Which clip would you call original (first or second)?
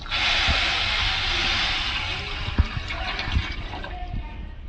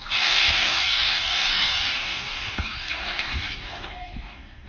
first